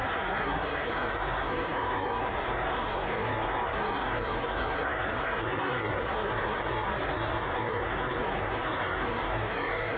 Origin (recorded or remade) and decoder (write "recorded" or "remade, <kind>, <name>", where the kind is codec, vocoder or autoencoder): remade, codec, SNAC